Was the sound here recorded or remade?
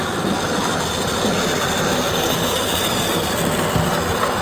recorded